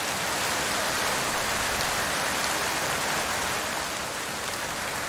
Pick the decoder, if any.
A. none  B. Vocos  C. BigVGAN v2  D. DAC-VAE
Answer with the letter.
A